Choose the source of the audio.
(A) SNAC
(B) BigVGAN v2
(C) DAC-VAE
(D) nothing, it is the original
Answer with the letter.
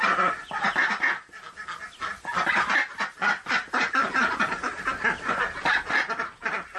D